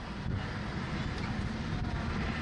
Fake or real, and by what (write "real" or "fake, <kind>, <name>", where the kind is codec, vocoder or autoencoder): real